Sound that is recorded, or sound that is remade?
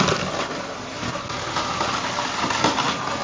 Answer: recorded